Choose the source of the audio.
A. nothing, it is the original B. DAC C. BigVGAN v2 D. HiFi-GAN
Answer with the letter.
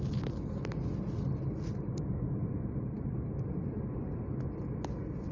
A